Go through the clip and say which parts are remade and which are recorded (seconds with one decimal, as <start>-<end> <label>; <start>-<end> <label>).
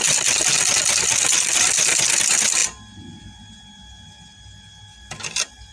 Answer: 0.0-5.7 recorded